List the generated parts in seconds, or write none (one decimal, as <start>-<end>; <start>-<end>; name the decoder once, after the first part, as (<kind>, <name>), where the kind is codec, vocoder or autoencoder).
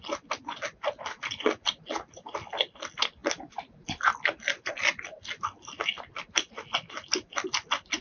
none